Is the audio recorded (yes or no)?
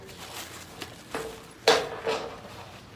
yes